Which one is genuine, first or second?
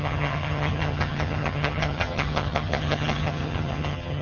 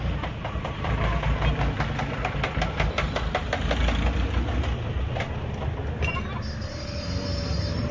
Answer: second